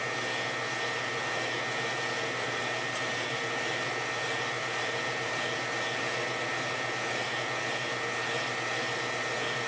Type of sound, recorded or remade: recorded